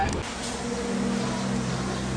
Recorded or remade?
recorded